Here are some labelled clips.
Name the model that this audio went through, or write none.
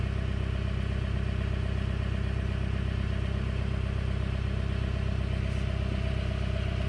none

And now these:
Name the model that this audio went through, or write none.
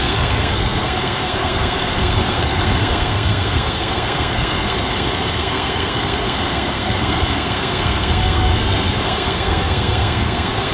codec, SNAC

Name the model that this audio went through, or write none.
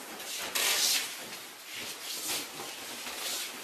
none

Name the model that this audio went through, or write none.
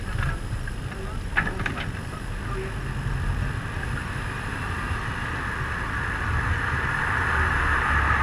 none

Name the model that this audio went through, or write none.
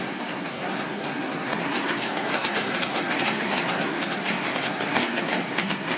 codec, SNAC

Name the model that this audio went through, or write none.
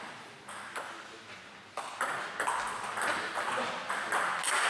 none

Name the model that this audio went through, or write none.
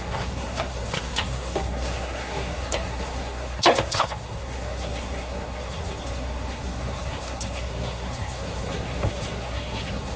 codec, SNAC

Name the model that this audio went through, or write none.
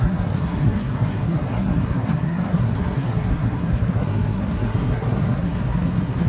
codec, SNAC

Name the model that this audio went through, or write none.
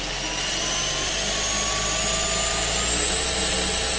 none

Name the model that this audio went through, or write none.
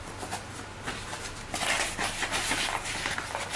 none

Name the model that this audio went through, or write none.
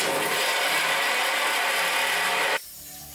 none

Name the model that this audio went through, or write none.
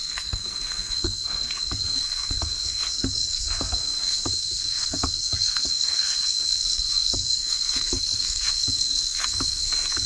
codec, SNAC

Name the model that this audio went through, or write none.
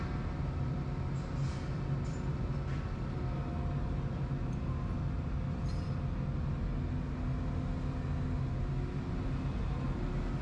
none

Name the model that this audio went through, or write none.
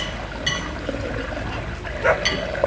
none